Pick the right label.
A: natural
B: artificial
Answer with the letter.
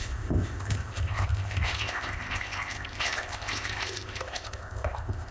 B